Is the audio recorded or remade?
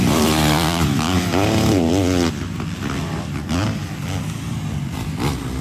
recorded